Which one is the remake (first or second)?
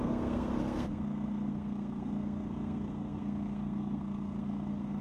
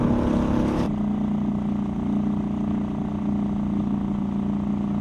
first